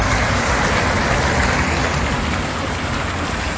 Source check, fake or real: real